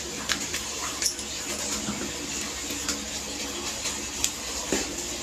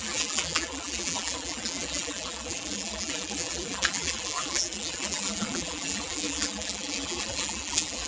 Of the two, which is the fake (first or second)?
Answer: second